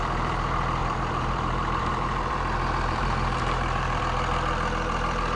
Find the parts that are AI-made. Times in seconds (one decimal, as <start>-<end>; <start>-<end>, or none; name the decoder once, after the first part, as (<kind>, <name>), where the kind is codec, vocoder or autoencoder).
0.8-4.0 (vocoder, BigVGAN v2)